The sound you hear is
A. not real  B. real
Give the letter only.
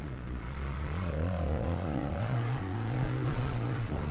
A